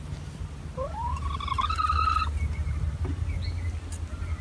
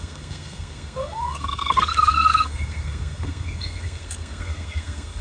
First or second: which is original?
first